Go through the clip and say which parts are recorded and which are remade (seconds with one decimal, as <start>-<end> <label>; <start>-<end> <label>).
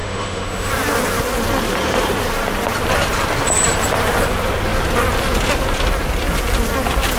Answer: 0.0-0.7 remade; 0.7-7.2 recorded